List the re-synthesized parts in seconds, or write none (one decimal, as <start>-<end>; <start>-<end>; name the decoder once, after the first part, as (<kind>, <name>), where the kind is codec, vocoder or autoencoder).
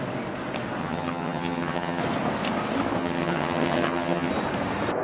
0.8-2.0 (vocoder, HiFi-GAN); 3.0-4.3